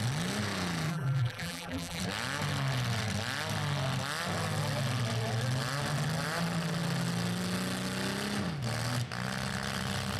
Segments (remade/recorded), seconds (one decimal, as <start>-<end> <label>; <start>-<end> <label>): 0.0-0.9 recorded; 0.9-2.0 remade; 2.0-10.2 recorded